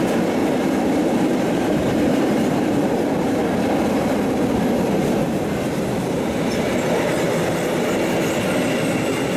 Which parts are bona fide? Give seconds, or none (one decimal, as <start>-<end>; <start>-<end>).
0.0-0.4; 3.0-9.4